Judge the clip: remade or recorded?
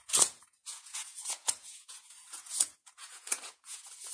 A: remade